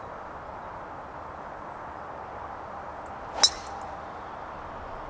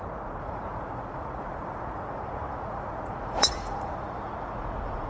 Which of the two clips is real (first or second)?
first